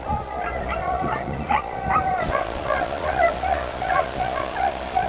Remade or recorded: remade